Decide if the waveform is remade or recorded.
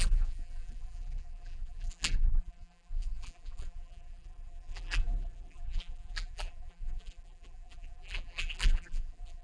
remade